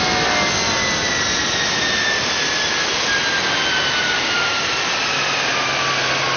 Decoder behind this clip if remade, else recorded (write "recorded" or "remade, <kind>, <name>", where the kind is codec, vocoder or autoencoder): recorded